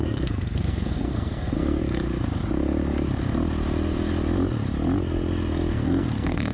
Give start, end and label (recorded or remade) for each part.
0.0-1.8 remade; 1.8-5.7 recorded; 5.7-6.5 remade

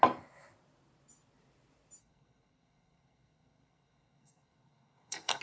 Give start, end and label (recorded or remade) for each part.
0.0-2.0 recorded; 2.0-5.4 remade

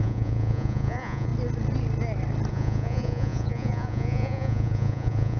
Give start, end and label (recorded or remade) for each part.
0.0-1.3 remade; 1.3-2.5 recorded; 2.5-5.4 remade